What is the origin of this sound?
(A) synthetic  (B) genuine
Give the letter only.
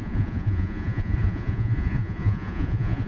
A